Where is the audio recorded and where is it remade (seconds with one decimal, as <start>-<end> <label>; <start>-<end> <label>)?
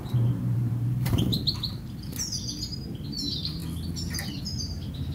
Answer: 0.0-1.3 remade; 1.3-3.2 recorded; 3.2-3.6 remade; 3.6-4.3 recorded; 4.3-5.1 remade